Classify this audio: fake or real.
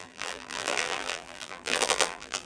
fake